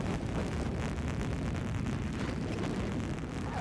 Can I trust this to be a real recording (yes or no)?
no